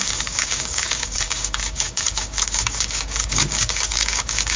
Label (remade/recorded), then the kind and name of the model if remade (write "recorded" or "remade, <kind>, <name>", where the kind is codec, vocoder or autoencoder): remade, codec, DAC